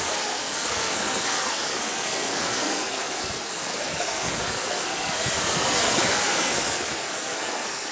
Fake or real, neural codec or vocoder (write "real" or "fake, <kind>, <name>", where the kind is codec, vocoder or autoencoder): fake, codec, SNAC